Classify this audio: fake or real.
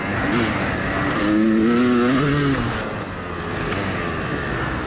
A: real